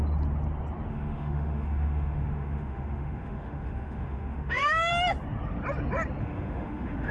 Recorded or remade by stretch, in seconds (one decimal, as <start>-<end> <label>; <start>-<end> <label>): 0.0-0.9 recorded; 0.9-4.9 remade; 4.9-6.2 recorded; 6.2-7.1 remade